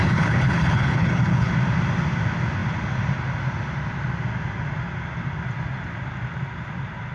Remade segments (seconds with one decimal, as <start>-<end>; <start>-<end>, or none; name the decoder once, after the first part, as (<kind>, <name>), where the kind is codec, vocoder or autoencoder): 0.0-1.5 (codec, HILCodec)